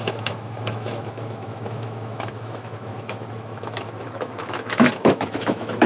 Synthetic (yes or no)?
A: yes